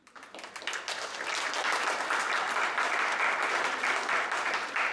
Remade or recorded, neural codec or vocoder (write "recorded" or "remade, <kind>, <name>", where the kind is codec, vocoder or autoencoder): recorded